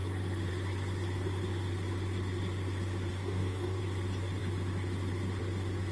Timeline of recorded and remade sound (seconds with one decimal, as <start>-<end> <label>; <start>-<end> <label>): 0.0-3.1 recorded; 3.1-3.8 remade; 3.8-5.9 recorded